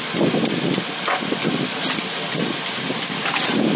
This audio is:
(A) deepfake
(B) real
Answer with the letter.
B